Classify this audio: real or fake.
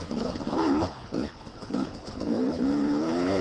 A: fake